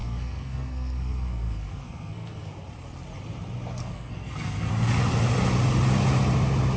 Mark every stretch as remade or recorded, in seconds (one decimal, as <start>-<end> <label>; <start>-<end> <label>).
0.0-2.5 remade; 2.5-3.8 recorded; 3.8-4.7 remade; 4.7-6.8 recorded